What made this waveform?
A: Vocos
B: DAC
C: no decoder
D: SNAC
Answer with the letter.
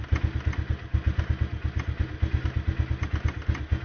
C